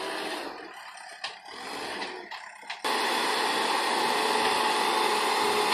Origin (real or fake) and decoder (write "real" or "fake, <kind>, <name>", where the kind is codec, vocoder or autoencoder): real